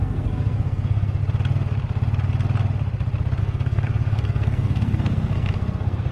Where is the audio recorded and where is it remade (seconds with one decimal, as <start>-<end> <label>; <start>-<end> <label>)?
0.0-1.2 remade; 1.2-3.4 recorded; 3.4-6.1 remade